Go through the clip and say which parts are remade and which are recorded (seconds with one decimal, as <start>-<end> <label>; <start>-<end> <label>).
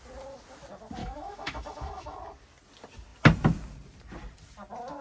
0.0-1.0 recorded; 1.0-2.2 remade; 2.2-5.0 recorded